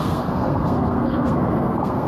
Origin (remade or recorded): remade